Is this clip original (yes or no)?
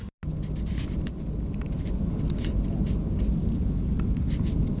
yes